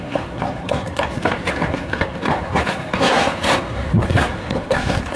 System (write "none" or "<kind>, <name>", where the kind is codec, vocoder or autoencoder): codec, SNAC